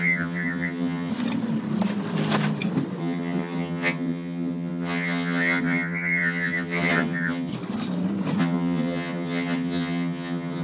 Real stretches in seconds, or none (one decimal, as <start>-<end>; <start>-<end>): 1.1-3.0; 7.5-8.4

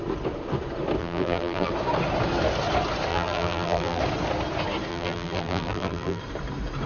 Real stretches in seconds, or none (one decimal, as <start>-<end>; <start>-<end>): 0.0-1.0; 1.7-3.1; 4.0-4.9; 6.2-6.9

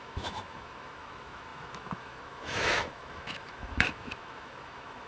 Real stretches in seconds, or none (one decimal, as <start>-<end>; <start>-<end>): none

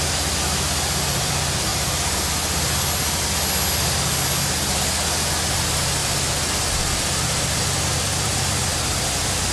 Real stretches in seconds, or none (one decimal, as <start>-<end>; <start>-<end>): 0.0-9.5

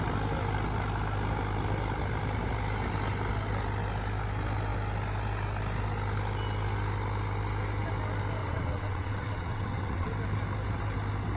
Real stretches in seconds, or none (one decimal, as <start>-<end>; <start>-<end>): 0.0-8.4; 10.1-11.4

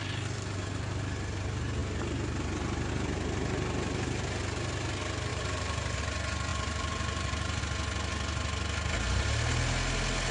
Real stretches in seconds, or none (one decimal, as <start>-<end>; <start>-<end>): 0.0-5.3; 6.0-6.5; 7.6-10.3